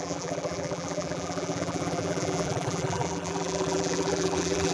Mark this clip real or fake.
fake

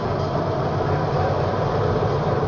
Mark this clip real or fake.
fake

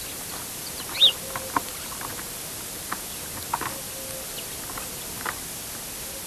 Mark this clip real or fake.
real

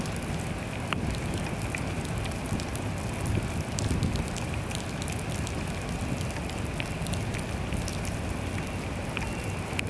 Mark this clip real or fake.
real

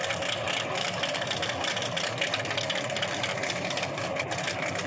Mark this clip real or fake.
real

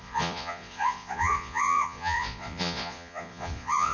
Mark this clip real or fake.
fake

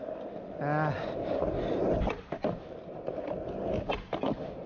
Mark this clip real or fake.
real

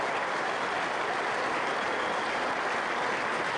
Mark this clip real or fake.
real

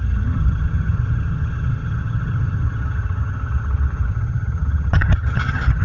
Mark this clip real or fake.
fake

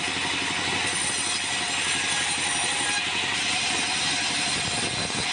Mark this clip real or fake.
real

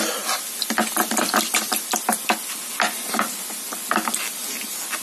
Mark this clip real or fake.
real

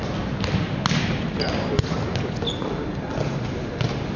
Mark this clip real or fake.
real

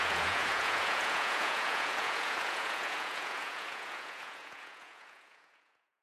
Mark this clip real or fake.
fake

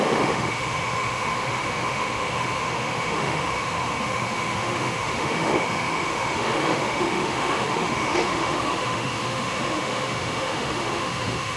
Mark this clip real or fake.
fake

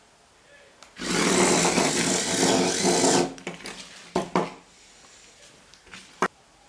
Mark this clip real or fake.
real